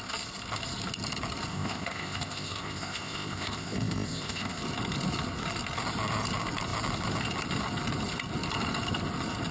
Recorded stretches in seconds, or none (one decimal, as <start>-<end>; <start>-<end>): 0.0-1.5; 4.6-9.5